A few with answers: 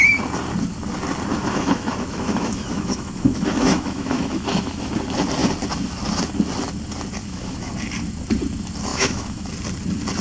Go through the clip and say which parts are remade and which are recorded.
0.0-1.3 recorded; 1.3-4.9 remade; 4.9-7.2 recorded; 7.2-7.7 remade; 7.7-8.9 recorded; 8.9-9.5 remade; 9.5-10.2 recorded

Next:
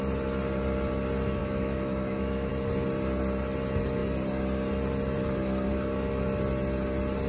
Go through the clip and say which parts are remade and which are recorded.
0.0-1.4 recorded; 1.4-2.5 remade; 2.5-7.3 recorded